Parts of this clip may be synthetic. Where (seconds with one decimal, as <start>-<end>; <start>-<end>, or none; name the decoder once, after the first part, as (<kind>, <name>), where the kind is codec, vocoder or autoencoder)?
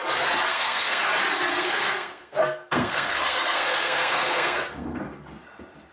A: 0.5-1.1 (codec, SNAC); 1.5-5.0